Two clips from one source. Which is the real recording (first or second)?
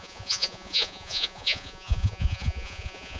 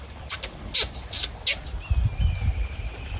second